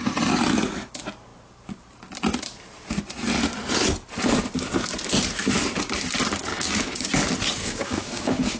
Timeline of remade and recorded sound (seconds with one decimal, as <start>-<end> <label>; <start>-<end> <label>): 0.0-6.5 recorded; 6.5-7.1 remade; 7.1-7.6 recorded; 7.6-8.6 remade